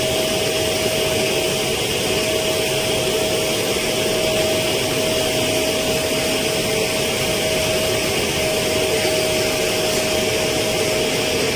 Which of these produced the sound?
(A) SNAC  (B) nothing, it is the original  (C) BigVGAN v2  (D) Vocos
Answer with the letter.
B